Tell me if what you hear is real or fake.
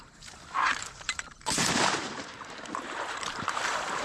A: fake